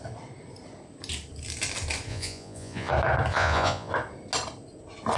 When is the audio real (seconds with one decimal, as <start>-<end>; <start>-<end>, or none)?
0.0-2.1; 2.9-3.3; 3.9-5.2